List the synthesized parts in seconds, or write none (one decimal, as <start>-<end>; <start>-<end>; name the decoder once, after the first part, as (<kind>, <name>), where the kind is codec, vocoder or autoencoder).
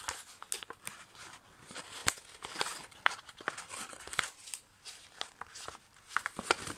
none